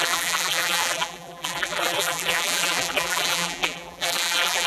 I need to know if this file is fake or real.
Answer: fake